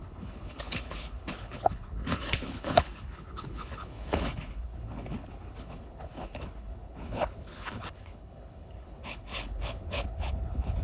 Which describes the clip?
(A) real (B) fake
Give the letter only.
B